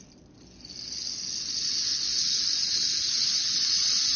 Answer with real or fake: real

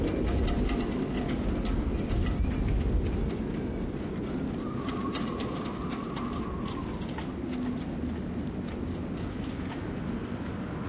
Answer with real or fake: real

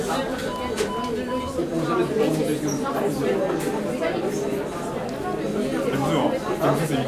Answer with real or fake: real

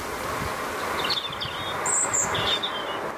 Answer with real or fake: real